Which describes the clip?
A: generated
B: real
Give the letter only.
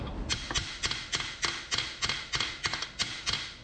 B